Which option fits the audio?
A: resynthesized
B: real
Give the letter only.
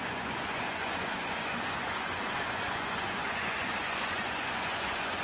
A